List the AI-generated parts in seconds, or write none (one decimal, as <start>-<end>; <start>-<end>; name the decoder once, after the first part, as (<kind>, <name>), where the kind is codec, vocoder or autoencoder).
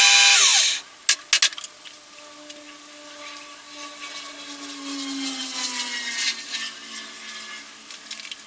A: none